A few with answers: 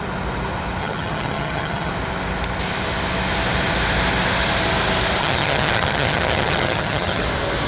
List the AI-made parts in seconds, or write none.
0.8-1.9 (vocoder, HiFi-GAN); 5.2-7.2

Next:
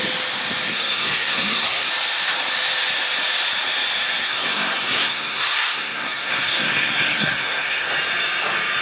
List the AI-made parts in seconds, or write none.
0.7-1.9 (codec, SNAC); 4.2-7.9

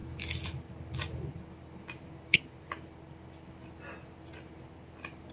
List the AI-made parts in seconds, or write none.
none

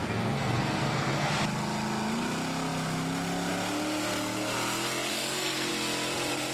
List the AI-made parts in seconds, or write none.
0.0-1.3 (codec, SNAC); 5.1-5.7

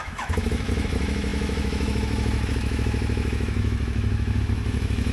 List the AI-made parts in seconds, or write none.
0.0-5.1 (autoencoder, DAC-VAE)

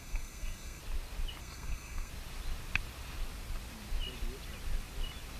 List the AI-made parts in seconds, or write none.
0.0-0.8 (codec, SNAC); 1.4-2.1